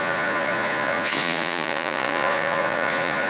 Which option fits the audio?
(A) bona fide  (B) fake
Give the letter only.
B